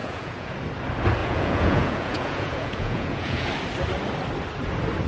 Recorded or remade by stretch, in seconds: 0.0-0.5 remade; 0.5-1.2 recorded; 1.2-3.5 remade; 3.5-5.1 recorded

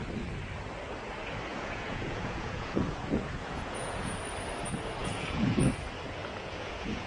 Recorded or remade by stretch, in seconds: 0.0-1.5 recorded; 1.5-4.2 remade; 4.2-5.0 recorded; 5.0-5.6 remade; 5.6-6.2 recorded; 6.2-7.1 remade

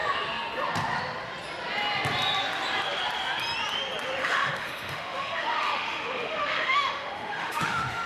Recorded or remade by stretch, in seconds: 0.0-4.2 recorded; 4.2-8.1 remade

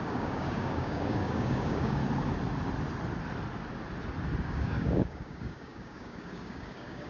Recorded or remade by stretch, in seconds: 0.0-2.0 remade; 2.0-4.4 recorded; 4.4-7.1 remade

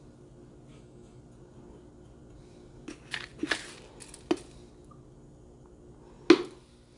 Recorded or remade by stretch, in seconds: 0.0-0.7 recorded; 0.7-1.2 remade; 1.2-7.0 recorded

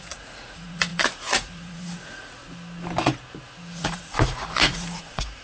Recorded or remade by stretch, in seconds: 0.0-2.4 remade; 2.4-3.7 recorded; 3.7-5.4 remade

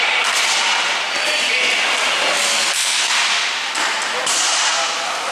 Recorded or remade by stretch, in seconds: 0.0-2.5 recorded; 2.5-3.1 remade; 3.1-5.3 recorded